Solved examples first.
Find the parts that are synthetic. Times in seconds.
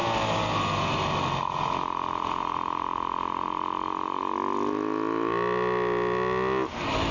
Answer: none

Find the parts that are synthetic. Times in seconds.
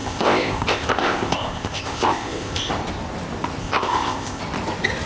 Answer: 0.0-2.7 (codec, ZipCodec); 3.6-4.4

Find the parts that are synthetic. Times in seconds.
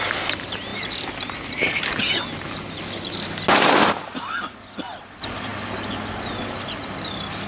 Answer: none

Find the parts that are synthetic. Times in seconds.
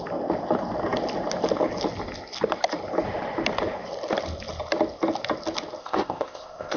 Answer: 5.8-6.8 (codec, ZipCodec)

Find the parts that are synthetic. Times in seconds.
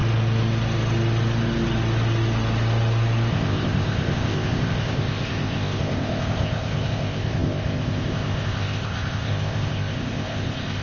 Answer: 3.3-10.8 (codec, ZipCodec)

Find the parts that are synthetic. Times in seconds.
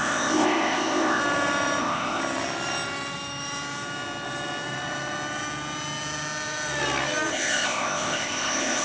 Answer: 0.0-1.2 (codec, ZipCodec); 1.8-2.2; 7.3-8.8